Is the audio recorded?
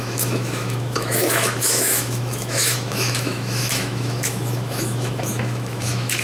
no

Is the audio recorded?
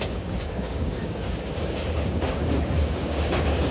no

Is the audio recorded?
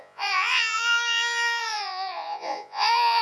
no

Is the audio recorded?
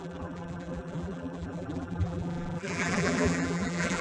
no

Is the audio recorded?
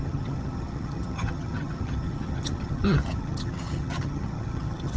no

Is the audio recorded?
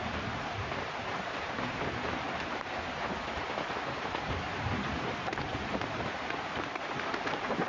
no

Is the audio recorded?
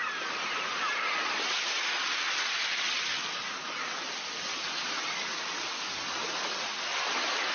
no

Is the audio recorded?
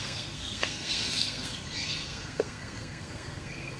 no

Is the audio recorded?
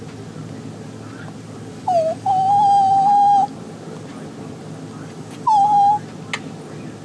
yes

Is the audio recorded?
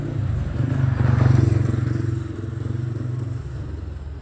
yes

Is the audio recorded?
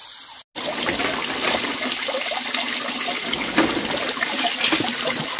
yes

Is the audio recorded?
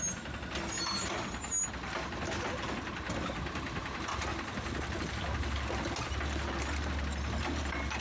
yes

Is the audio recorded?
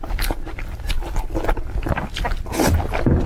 yes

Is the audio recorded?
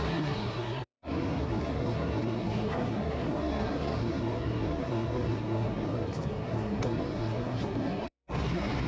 no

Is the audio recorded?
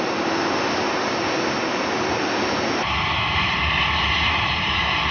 yes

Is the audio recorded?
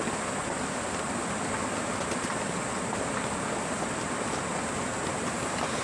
yes